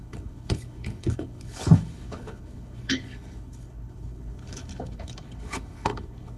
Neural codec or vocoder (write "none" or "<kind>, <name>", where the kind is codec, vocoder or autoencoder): codec, HILCodec